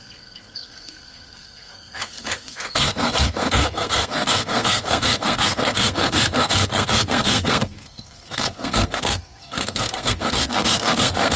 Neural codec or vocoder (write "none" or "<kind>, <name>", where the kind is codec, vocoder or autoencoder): codec, SNAC